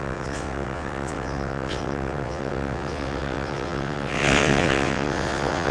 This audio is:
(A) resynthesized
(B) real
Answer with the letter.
A